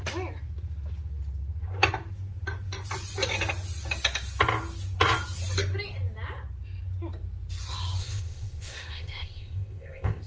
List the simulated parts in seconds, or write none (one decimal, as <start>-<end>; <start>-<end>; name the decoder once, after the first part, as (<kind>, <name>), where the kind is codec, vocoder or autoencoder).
8.0-10.3 (codec, ZipCodec)